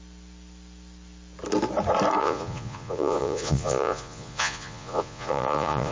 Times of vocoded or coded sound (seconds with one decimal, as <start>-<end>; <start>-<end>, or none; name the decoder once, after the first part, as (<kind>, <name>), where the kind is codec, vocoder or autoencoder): 2.2-5.9 (vocoder, Vocos)

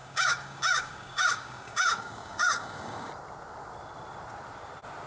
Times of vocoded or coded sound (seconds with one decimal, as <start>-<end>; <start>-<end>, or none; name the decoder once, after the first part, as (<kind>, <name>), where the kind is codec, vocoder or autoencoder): 0.0-3.1 (codec, DAC)